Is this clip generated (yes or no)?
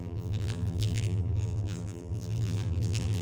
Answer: yes